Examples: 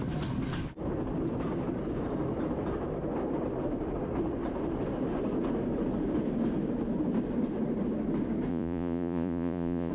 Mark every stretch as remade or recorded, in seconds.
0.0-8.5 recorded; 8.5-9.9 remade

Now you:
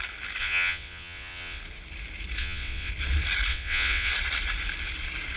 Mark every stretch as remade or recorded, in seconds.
0.0-0.4 recorded; 0.4-1.6 remade; 1.6-2.4 recorded; 2.4-2.9 remade; 2.9-3.5 recorded; 3.5-4.1 remade; 4.1-5.4 recorded

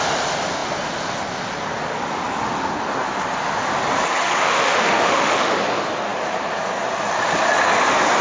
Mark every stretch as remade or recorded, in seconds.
0.0-4.4 recorded; 4.4-5.5 remade; 5.5-8.2 recorded

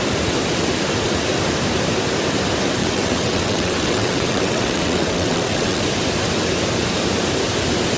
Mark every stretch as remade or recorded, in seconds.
0.0-2.8 recorded; 2.8-5.8 remade; 5.8-8.0 recorded

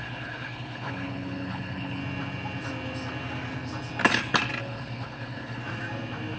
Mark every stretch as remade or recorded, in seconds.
0.0-2.0 remade; 2.0-4.6 recorded; 4.6-5.6 remade; 5.6-6.4 recorded

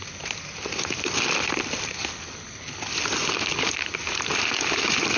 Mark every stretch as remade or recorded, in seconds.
0.0-5.2 recorded

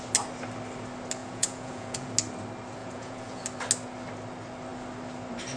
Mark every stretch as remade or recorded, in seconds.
0.0-1.2 recorded; 1.2-2.1 remade; 2.1-2.8 recorded; 2.8-3.4 remade; 3.4-5.6 recorded